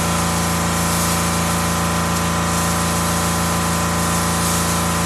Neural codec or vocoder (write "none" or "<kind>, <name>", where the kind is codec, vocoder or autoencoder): none